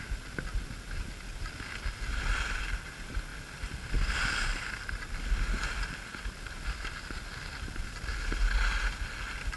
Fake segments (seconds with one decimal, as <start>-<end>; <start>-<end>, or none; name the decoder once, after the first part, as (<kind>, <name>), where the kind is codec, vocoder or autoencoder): none